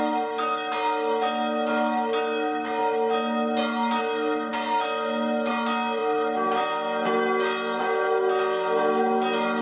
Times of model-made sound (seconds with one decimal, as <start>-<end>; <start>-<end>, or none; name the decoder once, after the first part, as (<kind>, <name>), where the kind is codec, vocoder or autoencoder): none